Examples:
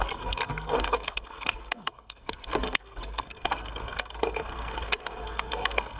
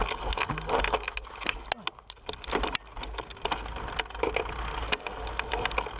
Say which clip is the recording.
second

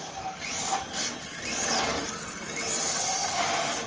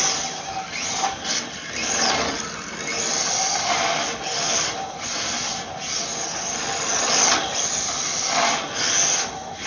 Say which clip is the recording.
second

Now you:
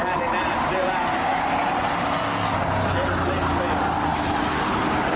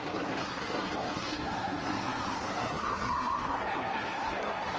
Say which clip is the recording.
first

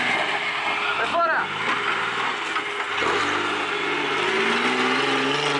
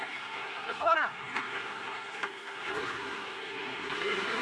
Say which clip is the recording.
first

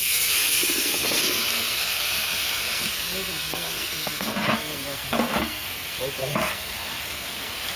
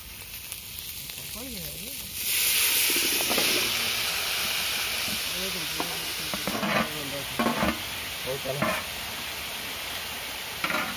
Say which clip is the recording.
second